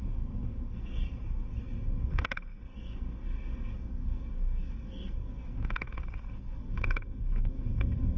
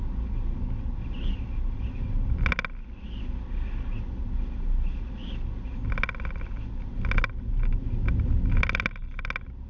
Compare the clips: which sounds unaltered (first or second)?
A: second